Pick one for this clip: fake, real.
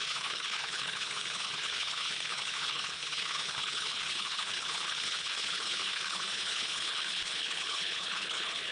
fake